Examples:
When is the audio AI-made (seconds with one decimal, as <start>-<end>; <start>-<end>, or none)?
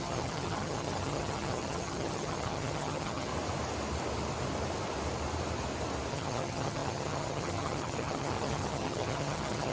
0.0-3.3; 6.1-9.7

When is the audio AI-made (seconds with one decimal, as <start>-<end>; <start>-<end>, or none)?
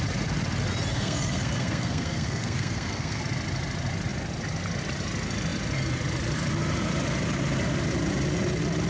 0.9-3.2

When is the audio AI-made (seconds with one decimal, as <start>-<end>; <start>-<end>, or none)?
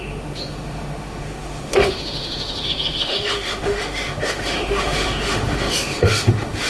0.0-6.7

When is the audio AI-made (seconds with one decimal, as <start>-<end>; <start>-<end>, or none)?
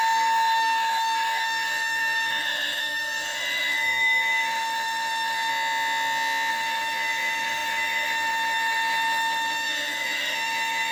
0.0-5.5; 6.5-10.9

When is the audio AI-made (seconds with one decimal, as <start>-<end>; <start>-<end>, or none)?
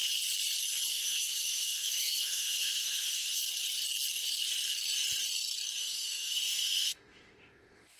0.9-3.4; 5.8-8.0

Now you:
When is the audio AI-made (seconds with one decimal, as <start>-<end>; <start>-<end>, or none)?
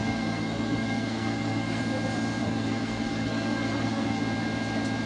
0.0-1.8; 2.4-4.2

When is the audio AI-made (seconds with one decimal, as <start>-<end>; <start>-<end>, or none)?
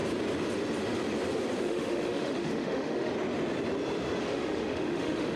1.6-3.1; 4.2-5.4